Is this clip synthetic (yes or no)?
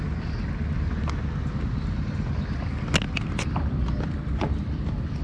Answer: no